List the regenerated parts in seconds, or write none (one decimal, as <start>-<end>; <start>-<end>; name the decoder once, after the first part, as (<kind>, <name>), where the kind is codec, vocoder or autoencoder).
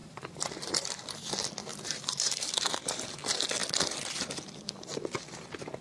0.0-0.5 (vocoder, BigVGAN v2); 1.7-2.7